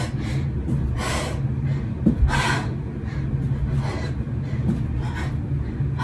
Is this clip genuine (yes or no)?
yes